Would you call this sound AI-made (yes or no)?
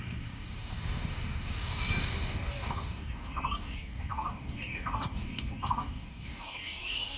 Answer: yes